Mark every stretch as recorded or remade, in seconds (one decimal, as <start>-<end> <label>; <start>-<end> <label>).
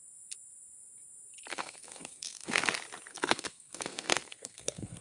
0.0-1.5 recorded; 1.5-2.6 remade; 2.6-3.1 recorded; 3.1-5.0 remade